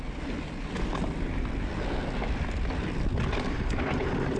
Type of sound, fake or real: real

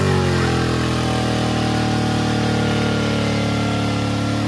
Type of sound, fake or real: real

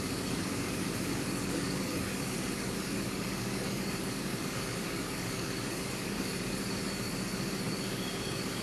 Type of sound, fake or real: fake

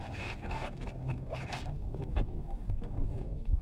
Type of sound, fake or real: fake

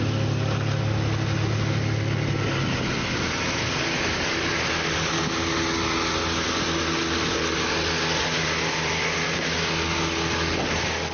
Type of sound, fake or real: real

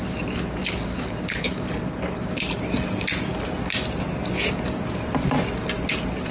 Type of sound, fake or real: real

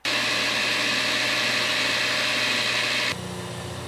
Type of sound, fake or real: real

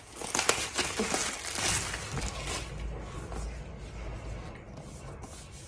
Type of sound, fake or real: real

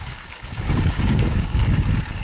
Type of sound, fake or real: fake